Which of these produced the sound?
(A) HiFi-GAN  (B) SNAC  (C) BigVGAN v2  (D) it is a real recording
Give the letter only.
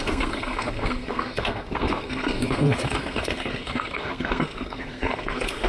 B